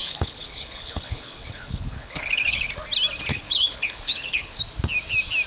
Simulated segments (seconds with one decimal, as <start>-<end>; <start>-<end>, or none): 0.0-2.7; 3.3-4.6